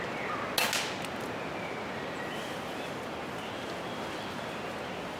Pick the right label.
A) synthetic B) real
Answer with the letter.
B